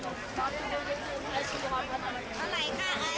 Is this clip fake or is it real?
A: real